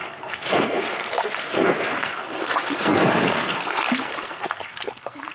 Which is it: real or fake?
fake